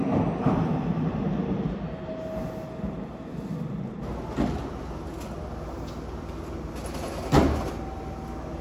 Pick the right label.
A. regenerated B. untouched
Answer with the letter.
B